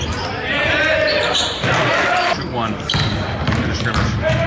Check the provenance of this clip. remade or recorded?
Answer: recorded